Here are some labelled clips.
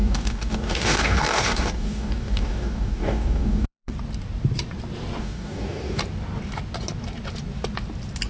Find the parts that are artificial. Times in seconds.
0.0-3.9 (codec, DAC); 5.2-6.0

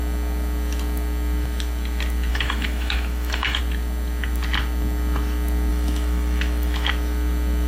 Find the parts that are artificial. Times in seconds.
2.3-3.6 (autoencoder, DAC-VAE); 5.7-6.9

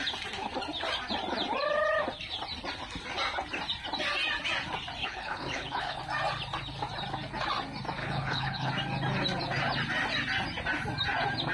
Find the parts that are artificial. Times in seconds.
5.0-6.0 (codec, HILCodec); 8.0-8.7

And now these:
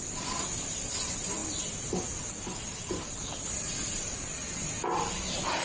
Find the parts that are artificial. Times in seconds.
none

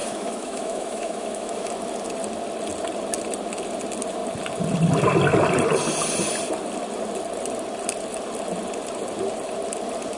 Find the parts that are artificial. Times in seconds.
0.0-1.7 (autoencoder, DAC-VAE)

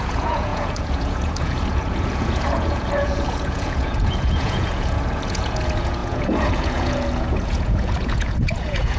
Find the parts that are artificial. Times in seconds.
0.0-9.0 (vocoder, Vocos)

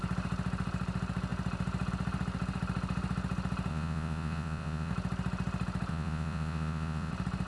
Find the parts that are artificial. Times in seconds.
3.7-4.9 (vocoder, Vocos); 5.9-7.1